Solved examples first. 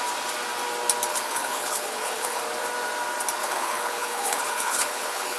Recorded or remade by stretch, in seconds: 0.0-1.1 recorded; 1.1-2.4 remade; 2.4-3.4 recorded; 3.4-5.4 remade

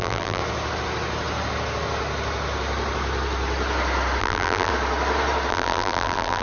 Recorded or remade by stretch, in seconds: 0.0-0.4 remade; 0.4-4.2 recorded; 4.2-4.7 remade; 4.7-5.5 recorded; 5.5-6.4 remade

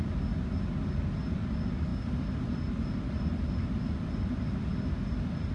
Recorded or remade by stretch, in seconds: 0.0-5.5 recorded